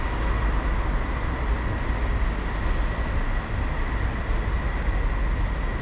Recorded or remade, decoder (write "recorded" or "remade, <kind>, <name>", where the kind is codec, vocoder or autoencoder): recorded